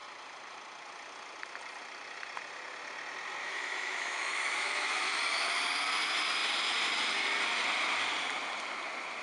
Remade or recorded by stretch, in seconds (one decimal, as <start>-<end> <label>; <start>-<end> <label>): 0.0-3.4 recorded; 3.4-5.2 remade; 5.2-9.2 recorded